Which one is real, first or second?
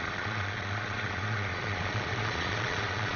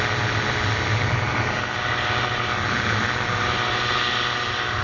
second